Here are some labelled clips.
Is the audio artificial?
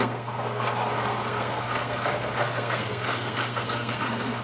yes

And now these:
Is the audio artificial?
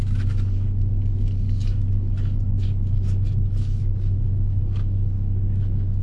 yes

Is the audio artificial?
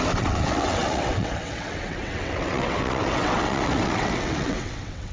yes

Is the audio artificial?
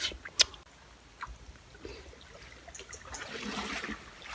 no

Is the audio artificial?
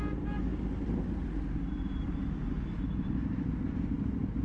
no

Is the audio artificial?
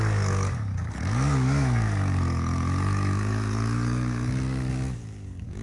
yes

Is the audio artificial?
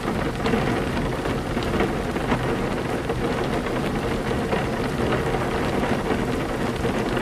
no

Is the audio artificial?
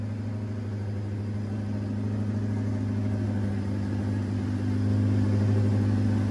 no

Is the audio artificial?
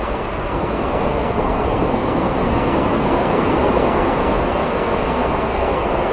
yes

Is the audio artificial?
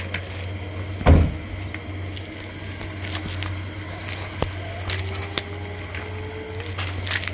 no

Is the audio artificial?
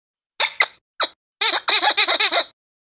no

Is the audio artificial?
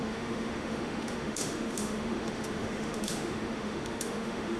yes